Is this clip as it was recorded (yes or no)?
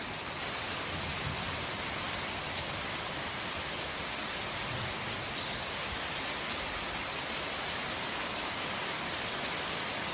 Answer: yes